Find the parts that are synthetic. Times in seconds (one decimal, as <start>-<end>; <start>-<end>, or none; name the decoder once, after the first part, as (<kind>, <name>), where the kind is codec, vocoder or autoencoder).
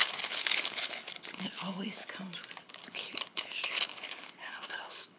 0.0-2.0 (codec, HILCodec); 2.6-5.2